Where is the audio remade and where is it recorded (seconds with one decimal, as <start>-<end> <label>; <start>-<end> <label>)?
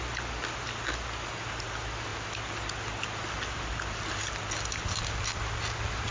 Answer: 0.0-6.1 recorded